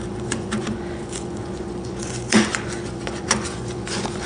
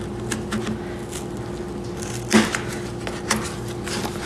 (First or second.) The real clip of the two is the second